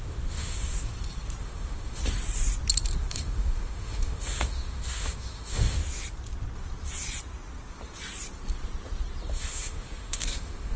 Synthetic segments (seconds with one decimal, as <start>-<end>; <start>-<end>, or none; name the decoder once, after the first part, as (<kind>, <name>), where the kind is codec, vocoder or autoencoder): 0.0-0.9 (autoencoder, DAC-VAE); 1.4-2.0; 3.1-5.8; 9.3-10.8